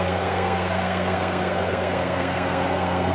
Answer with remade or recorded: remade